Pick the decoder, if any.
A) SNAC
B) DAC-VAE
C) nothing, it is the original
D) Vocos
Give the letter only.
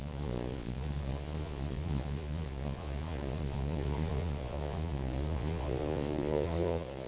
D